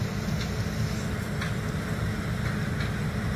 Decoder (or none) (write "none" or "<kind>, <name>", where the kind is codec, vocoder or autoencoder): none